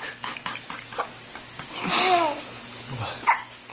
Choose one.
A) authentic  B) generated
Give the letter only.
A